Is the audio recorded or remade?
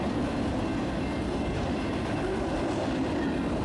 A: recorded